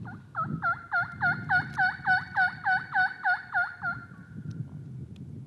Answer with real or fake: real